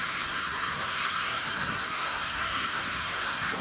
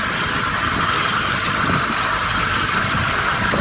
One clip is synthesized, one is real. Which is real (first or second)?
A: second